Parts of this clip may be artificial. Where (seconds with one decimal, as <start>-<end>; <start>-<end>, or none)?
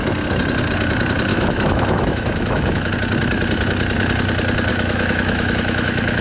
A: 1.3-2.9; 4.7-6.2